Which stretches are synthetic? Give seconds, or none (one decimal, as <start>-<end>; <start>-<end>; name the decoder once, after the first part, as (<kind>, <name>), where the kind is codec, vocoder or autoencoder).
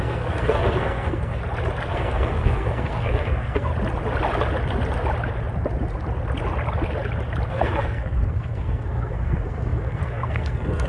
0.0-1.4 (codec, SNAC); 1.9-3.7; 7.5-10.9